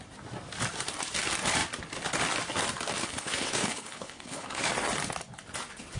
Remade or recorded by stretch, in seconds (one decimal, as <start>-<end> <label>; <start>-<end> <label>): 0.0-3.0 recorded; 3.0-4.7 remade; 4.7-6.0 recorded